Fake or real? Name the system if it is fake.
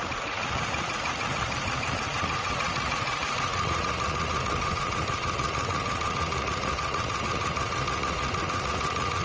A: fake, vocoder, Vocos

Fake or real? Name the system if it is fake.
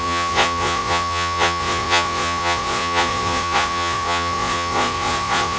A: fake, vocoder, Vocos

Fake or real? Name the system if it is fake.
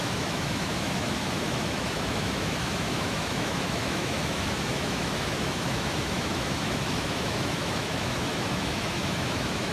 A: fake, autoencoder, DAC-VAE